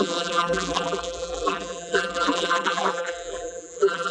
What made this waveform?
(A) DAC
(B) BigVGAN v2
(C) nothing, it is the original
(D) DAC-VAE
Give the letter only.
B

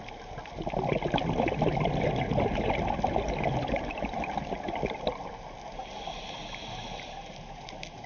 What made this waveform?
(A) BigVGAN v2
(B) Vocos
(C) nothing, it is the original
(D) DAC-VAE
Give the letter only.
C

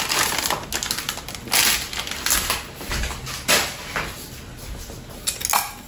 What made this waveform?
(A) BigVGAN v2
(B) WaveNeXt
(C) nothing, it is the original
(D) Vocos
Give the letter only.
C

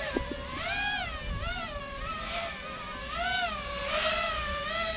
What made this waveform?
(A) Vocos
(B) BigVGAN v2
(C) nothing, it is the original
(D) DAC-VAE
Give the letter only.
C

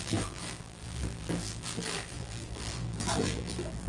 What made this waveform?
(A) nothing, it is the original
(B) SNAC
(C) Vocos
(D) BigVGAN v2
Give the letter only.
D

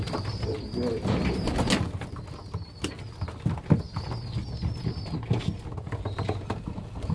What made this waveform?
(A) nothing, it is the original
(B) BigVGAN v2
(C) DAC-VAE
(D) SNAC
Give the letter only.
A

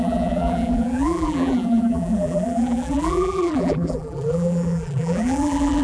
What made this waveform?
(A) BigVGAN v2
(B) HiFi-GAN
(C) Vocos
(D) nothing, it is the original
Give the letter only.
A